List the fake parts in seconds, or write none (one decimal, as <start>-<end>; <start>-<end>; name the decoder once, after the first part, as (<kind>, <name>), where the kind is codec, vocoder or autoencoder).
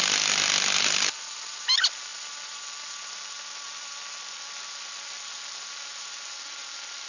none